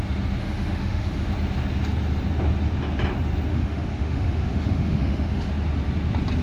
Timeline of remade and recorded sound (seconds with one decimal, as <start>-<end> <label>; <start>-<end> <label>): 0.0-0.4 recorded; 0.4-1.3 remade; 1.3-3.5 recorded; 3.5-5.5 remade; 5.5-6.4 recorded